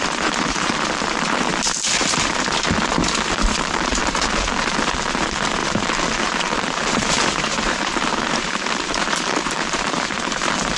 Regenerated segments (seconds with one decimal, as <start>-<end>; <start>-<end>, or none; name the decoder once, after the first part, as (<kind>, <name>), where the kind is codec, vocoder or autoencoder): 0.0-1.5 (vocoder, BigVGAN v2); 3.3-10.8